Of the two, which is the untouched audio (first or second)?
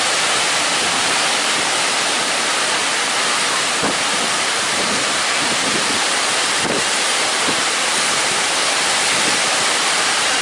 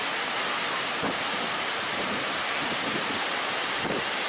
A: second